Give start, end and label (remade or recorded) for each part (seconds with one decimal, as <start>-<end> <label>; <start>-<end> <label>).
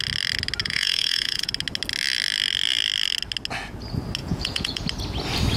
0.0-0.6 recorded; 0.6-1.5 remade; 1.5-4.2 recorded; 4.2-4.8 remade; 4.8-5.6 recorded